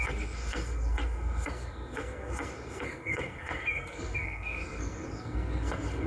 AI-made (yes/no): yes